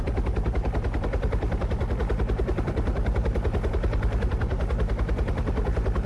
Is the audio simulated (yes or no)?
yes